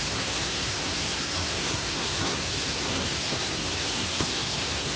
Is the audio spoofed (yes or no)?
yes